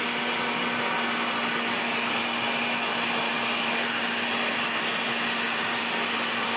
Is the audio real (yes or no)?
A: yes